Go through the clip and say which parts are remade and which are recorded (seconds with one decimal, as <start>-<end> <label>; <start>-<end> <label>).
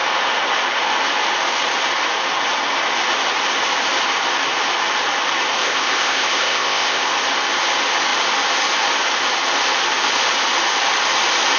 0.0-5.6 recorded; 5.6-7.1 remade; 7.1-11.6 recorded